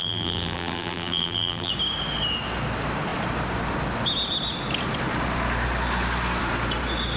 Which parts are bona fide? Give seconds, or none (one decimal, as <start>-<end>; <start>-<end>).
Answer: 1.7-7.2